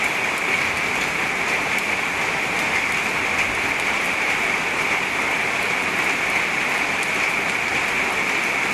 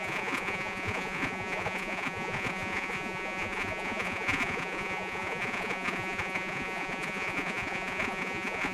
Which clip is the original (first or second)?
first